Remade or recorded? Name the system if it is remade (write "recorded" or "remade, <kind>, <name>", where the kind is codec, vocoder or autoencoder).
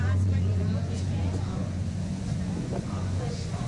remade, vocoder, Vocos